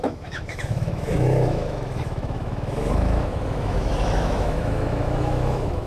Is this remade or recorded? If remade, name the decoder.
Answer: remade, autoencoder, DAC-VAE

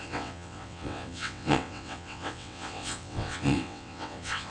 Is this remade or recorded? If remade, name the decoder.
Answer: remade, vocoder, WaveNeXt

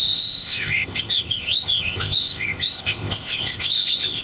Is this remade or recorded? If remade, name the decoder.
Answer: remade, codec, ZipCodec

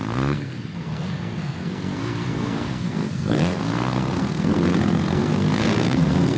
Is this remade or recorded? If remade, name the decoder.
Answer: remade, codec, SNAC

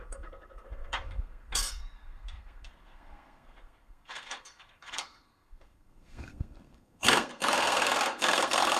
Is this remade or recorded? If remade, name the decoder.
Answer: remade, codec, SNAC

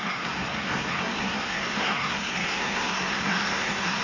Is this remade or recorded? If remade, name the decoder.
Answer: remade, codec, SNAC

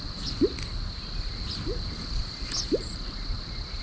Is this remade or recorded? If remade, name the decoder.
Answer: recorded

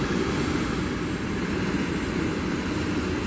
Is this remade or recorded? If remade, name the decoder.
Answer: recorded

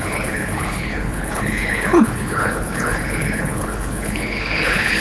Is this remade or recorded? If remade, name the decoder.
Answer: remade, codec, HILCodec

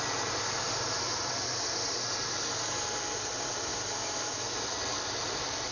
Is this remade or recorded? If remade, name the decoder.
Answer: recorded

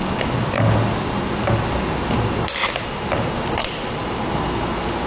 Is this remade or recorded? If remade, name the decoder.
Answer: recorded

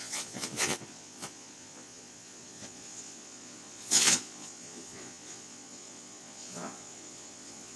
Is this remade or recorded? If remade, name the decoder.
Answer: remade, vocoder, Vocos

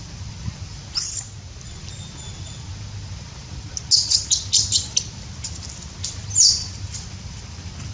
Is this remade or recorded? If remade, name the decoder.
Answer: recorded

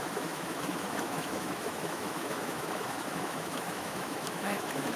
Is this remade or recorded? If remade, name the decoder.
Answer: remade, autoencoder, DAC-VAE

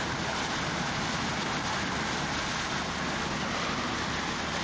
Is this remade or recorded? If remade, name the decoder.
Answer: recorded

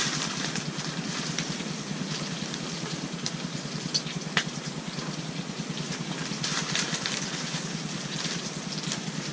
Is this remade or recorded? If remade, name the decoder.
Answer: remade, vocoder, BigVGAN v2